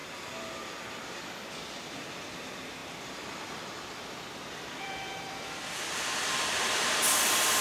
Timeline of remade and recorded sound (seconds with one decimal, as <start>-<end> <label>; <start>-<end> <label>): 0.0-1.2 remade; 1.2-2.8 recorded; 2.8-6.5 remade; 6.5-7.6 recorded